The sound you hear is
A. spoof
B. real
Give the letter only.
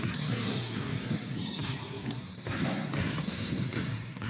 A